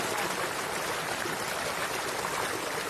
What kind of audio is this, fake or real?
real